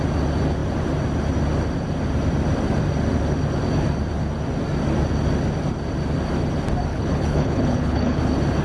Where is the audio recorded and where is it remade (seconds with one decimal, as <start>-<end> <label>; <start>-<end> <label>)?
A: 0.0-6.9 recorded; 6.9-8.2 remade; 8.2-8.6 recorded